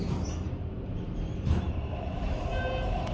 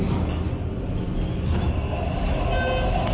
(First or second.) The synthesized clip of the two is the first